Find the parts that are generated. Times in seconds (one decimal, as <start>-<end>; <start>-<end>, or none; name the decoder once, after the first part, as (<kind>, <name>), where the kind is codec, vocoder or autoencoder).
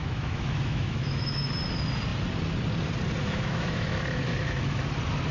0.0-1.5 (autoencoder, DAC-VAE); 3.2-4.8